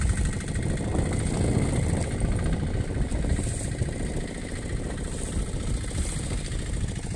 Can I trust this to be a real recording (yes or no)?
yes